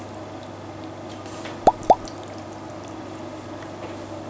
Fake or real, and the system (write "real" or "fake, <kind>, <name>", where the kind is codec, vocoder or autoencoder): real